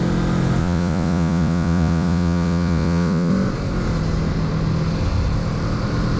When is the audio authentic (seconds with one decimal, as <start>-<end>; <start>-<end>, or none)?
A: 0.0-0.6; 3.3-6.2